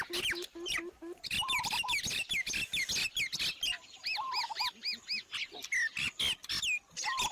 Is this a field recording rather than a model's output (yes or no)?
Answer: yes